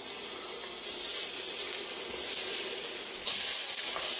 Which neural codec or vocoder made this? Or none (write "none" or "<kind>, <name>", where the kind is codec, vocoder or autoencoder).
none